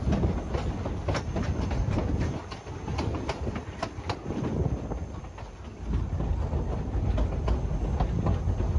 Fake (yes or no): no